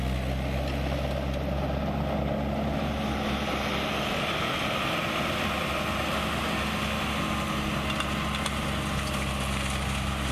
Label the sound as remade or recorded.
recorded